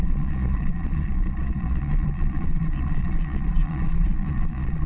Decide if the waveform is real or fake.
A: fake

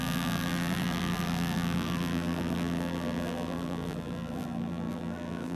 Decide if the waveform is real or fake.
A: fake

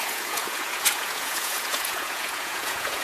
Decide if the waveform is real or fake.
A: fake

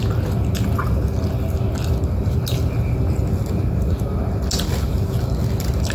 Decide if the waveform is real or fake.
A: real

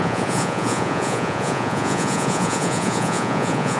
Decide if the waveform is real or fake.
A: fake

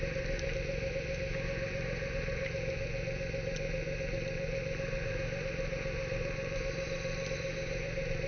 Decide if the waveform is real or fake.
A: fake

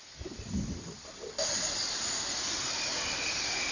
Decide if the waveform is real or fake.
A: real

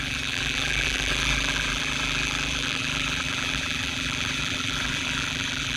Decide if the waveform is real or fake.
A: fake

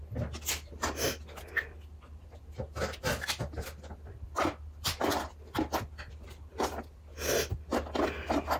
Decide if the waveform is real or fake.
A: real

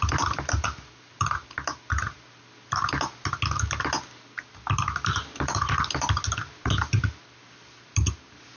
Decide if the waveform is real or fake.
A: real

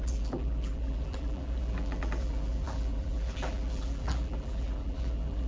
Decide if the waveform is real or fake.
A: fake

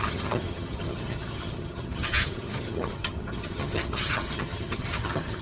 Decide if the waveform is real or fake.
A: fake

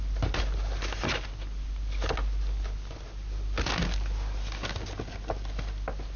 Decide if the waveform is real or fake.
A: real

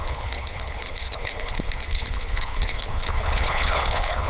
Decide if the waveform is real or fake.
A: fake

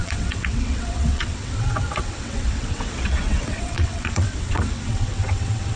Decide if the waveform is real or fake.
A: fake